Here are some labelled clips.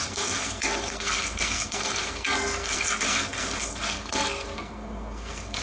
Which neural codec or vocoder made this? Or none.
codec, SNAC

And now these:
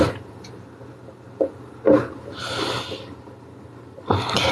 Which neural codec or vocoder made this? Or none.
none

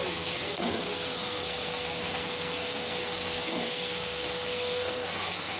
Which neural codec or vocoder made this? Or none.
codec, SNAC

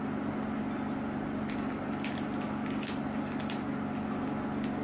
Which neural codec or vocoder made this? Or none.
none